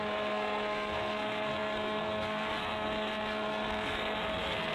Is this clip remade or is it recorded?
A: remade